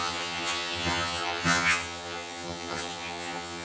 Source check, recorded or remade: remade